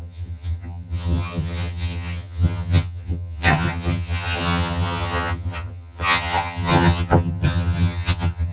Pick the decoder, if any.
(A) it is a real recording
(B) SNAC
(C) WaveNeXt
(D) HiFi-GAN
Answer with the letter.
D